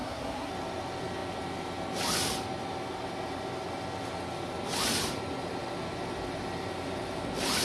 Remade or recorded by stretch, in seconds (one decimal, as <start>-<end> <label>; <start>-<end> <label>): 0.0-0.5 remade; 0.5-7.6 recorded